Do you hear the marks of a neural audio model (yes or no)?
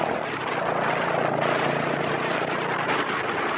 no